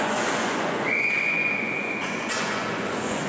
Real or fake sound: fake